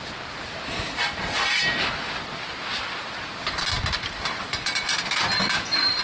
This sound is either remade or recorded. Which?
recorded